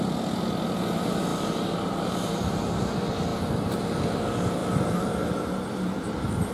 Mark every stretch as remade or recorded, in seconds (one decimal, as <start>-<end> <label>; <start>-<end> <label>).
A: 0.0-1.3 recorded; 1.3-2.8 remade; 2.8-3.3 recorded; 3.3-3.8 remade; 3.8-4.6 recorded; 4.6-6.5 remade